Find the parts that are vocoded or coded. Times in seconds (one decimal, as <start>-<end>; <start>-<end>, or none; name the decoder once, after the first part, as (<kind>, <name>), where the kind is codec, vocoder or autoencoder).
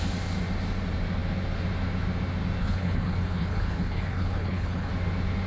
2.6-4.9 (codec, HILCodec)